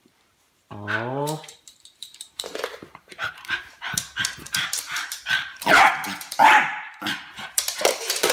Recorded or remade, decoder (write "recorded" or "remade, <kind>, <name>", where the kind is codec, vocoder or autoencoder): remade, vocoder, BigVGAN v2